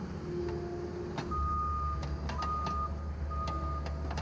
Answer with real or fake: real